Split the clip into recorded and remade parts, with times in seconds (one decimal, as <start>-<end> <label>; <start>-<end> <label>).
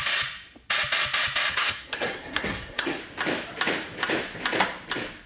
0.0-1.5 recorded; 1.5-3.0 remade; 3.0-5.3 recorded